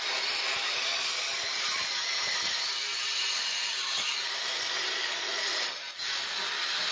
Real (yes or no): yes